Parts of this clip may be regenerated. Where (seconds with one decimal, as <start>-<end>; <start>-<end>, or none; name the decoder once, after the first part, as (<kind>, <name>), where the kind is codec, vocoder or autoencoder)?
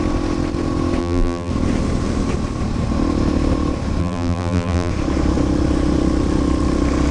1.0-1.5 (vocoder, BigVGAN v2); 4.0-4.9